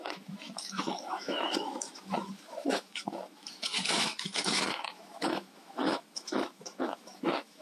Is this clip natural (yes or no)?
no